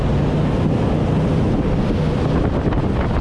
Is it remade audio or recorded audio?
recorded